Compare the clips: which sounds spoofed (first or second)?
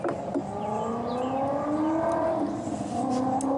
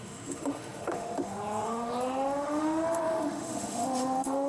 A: second